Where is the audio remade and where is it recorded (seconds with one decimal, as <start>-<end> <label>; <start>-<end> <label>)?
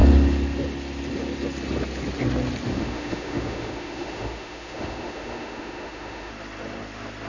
0.0-2.7 recorded; 2.7-6.3 remade; 6.3-7.3 recorded